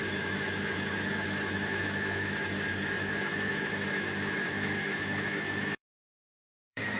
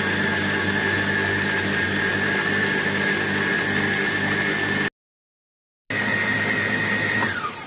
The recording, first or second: second